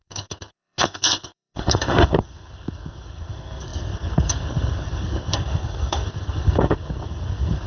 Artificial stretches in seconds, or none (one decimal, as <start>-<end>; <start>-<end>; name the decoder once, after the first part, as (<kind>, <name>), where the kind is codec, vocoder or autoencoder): 0.0-7.7 (codec, SNAC)